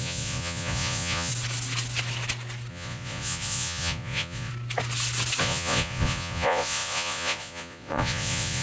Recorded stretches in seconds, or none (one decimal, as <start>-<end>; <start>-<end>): 1.3-2.7; 4.5-5.4